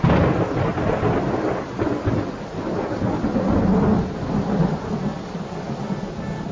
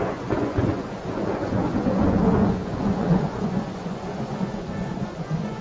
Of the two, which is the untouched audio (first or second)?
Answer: first